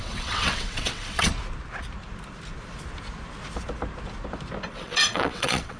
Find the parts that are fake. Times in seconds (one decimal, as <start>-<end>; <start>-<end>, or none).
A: 0.0-1.3; 4.7-5.8

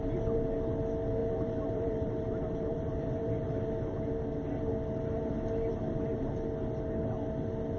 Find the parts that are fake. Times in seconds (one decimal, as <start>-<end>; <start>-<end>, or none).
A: 1.2-3.7

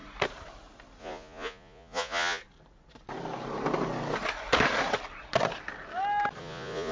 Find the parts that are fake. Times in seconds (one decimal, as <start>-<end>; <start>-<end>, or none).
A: 1.0-2.4; 6.4-6.9

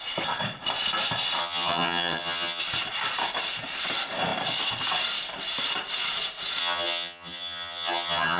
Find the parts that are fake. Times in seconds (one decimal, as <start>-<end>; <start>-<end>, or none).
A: 1.4-2.6; 6.6-8.4

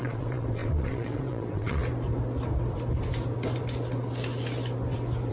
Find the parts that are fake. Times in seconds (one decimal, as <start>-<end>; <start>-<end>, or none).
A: 0.0-1.8

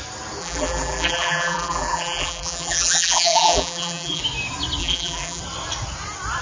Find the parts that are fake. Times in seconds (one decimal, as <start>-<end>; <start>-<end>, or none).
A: 0.4-4.2; 4.8-5.4

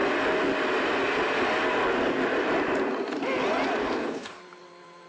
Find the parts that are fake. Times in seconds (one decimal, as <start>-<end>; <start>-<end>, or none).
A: 3.8-4.4

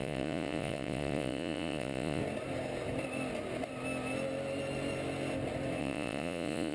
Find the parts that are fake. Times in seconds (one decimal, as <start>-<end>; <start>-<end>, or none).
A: 0.0-2.2; 5.8-6.7